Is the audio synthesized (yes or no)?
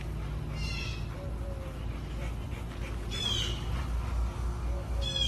no